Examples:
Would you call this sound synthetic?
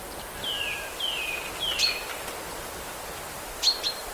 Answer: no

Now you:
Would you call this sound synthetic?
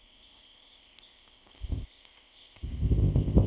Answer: yes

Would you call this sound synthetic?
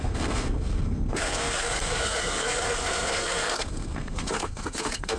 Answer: yes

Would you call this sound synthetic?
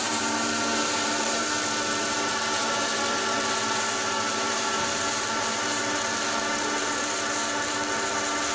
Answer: yes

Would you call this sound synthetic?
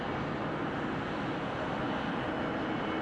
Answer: no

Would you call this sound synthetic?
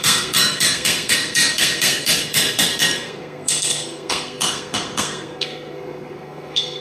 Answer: yes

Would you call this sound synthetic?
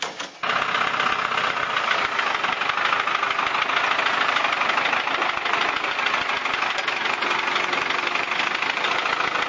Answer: no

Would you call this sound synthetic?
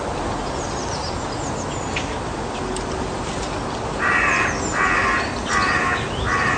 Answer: no